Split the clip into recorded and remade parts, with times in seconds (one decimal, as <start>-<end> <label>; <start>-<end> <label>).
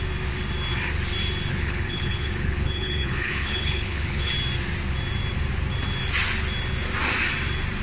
0.0-1.5 recorded; 1.5-4.3 remade; 4.3-7.8 recorded